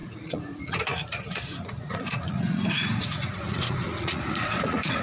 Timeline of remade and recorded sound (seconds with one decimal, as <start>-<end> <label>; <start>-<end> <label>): 0.0-5.0 remade